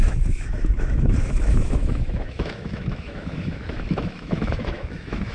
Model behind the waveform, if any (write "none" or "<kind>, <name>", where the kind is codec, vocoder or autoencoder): autoencoder, DAC-VAE